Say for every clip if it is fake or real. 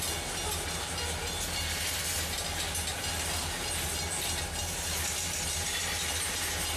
real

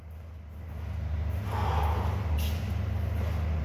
real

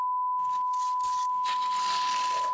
real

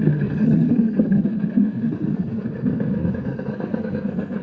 fake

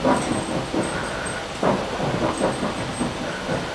real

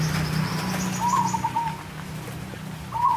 real